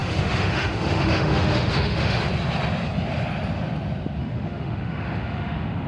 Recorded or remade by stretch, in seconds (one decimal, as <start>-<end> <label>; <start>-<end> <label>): 0.0-2.2 remade; 2.2-4.2 recorded; 4.2-5.9 remade